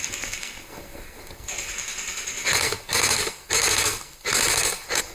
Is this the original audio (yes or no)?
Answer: no